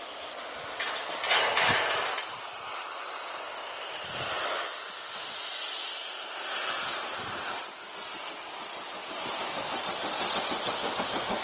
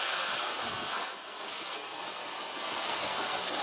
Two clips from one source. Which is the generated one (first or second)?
second